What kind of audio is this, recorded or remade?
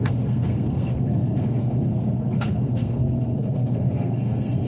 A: remade